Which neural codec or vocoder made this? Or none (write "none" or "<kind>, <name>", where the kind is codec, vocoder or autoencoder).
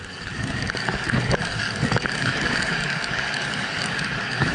codec, DAC